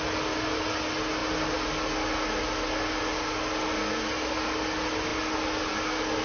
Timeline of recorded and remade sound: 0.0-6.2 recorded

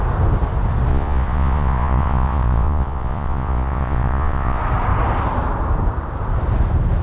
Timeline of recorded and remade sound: 0.0-0.9 recorded; 0.9-4.6 remade; 4.6-7.0 recorded

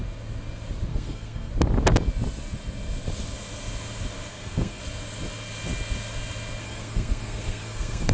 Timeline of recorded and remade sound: 0.0-0.9 recorded; 0.9-1.5 remade; 1.5-4.3 recorded; 4.3-4.8 remade; 4.8-6.6 recorded; 6.6-8.1 remade

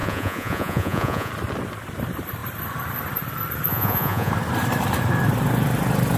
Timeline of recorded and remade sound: 0.0-1.3 remade; 1.3-3.7 recorded; 3.7-4.3 remade; 4.3-6.2 recorded

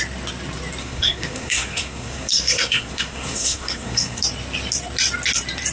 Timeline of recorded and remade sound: 0.0-0.8 recorded; 0.8-4.2 remade; 4.2-5.7 recorded

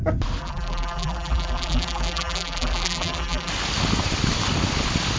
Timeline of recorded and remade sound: 0.0-0.4 recorded; 0.4-3.5 remade; 3.5-5.2 recorded

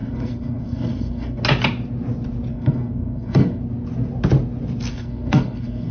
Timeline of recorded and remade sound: 0.0-1.4 remade; 1.4-2.5 recorded; 2.5-3.6 remade; 3.6-4.9 recorded; 4.9-5.9 remade

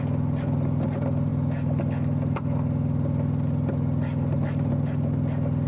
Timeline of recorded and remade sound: 0.0-5.7 recorded